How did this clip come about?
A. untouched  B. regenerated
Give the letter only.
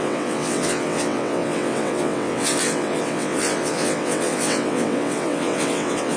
B